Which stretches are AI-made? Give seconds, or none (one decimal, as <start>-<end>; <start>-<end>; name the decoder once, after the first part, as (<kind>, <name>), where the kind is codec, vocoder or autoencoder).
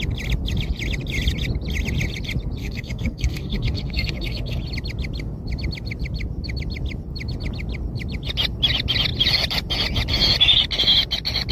2.6-4.6 (codec, SNAC)